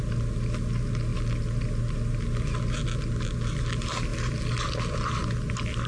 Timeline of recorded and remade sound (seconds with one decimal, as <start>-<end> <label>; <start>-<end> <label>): 0.0-5.9 recorded